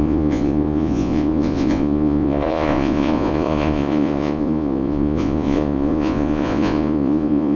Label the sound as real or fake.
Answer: fake